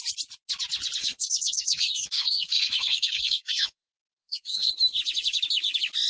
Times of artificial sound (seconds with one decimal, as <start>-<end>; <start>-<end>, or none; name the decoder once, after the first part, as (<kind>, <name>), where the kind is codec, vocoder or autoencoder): 1.0-4.7 (codec, SNAC)

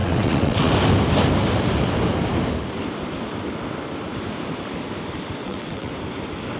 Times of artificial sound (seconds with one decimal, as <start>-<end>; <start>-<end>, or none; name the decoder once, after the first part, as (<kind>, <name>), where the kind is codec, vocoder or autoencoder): 0.0-0.7 (vocoder, WaveNeXt); 5.4-5.9